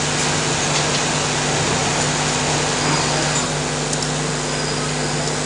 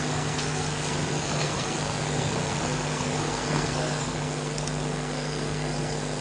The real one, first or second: first